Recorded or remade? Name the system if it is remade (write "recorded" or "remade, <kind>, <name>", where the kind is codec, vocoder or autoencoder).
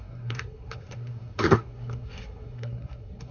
remade, codec, SNAC